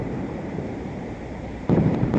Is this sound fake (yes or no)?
yes